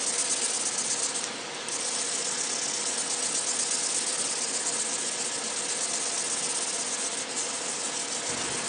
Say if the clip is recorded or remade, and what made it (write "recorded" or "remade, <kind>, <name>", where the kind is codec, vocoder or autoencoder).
recorded